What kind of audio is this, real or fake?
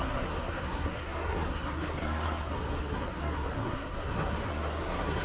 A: fake